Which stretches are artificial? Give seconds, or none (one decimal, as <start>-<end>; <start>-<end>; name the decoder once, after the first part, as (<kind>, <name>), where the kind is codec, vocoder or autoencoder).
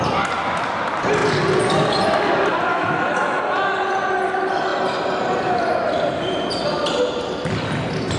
2.7-3.4 (autoencoder, DAC-VAE)